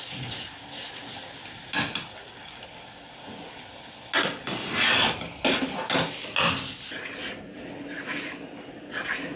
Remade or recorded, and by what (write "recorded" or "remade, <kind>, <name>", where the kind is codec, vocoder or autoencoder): recorded